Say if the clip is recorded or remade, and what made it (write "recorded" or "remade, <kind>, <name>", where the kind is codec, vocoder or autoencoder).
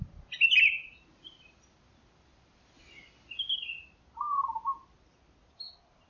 recorded